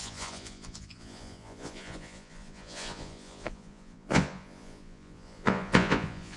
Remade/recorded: remade